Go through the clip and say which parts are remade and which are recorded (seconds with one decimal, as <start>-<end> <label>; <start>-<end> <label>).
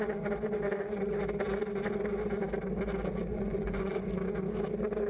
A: 0.0-3.3 recorded; 3.3-4.0 remade; 4.0-5.1 recorded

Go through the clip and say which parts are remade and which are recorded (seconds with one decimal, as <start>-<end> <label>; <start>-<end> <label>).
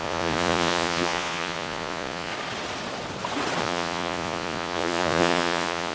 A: 0.0-2.3 remade; 2.3-3.6 recorded; 3.6-5.9 remade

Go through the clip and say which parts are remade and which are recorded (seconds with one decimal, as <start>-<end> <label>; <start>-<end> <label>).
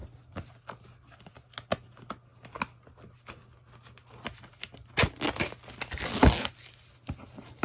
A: 0.0-7.6 recorded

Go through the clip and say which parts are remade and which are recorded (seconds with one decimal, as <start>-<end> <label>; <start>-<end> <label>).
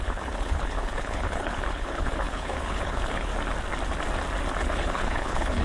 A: 0.0-3.3 remade; 3.3-4.6 recorded; 4.6-5.6 remade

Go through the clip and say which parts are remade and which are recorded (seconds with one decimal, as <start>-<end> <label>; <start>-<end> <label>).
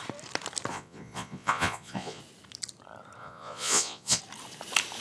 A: 0.0-0.7 recorded; 0.7-2.2 remade; 2.2-3.2 recorded; 3.2-4.2 remade; 4.2-5.0 recorded